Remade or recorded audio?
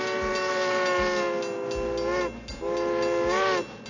recorded